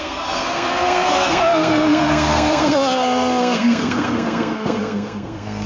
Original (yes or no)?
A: no